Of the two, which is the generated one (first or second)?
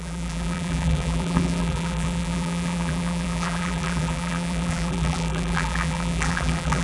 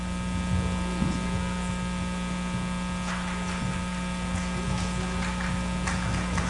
first